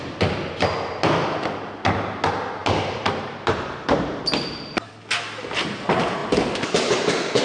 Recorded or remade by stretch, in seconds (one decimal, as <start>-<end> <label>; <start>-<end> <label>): 0.0-2.6 recorded; 2.6-4.9 remade; 4.9-7.4 recorded

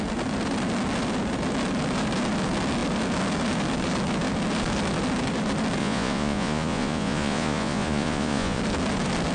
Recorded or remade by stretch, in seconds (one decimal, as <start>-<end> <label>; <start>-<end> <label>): 0.0-5.8 recorded; 5.8-8.6 remade; 8.6-9.3 recorded

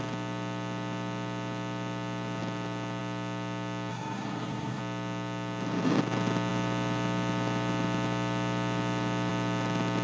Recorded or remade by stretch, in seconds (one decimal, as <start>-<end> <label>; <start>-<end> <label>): 0.0-3.9 recorded; 3.9-4.8 remade; 4.8-10.0 recorded